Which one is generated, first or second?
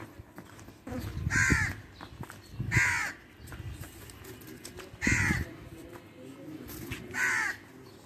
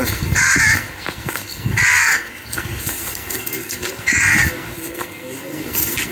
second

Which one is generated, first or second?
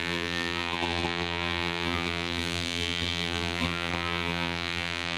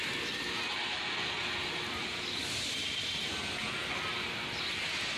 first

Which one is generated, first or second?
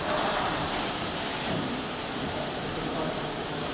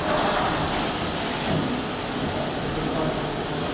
first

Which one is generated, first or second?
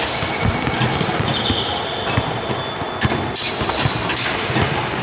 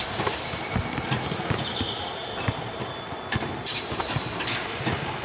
second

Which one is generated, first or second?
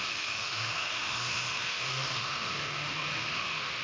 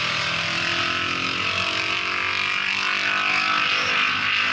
first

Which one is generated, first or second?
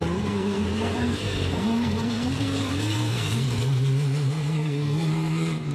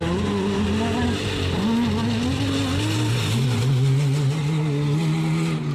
first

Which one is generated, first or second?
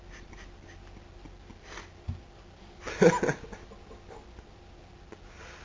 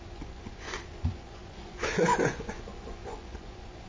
second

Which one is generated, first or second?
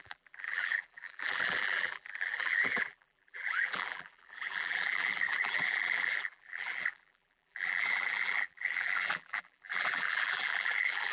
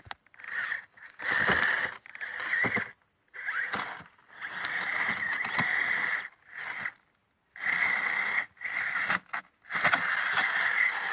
first